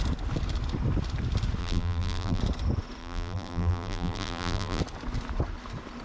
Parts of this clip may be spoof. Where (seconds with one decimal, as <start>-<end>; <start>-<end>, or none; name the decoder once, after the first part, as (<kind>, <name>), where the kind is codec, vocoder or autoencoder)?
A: 1.6-2.4 (vocoder, BigVGAN v2); 3.0-4.8